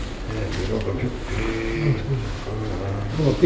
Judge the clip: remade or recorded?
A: recorded